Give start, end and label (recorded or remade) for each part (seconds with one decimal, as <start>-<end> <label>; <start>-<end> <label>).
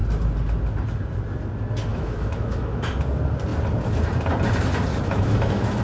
0.0-1.9 recorded; 1.9-2.8 remade; 2.8-4.9 recorded; 4.9-5.8 remade